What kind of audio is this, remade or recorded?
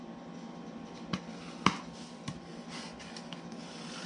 recorded